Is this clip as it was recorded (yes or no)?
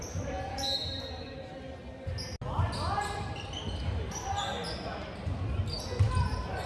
yes